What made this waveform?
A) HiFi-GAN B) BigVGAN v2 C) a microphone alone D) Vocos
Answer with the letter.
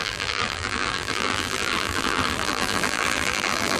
B